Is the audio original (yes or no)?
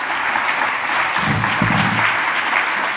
yes